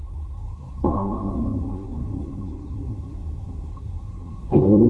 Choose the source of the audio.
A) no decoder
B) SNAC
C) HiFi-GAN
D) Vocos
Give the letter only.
B